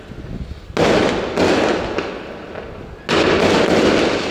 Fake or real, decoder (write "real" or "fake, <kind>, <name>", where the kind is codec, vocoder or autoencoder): real